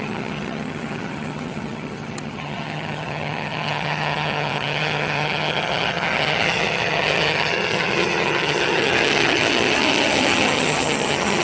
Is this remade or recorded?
remade